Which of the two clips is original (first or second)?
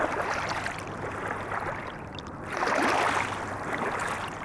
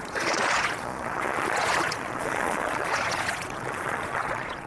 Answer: first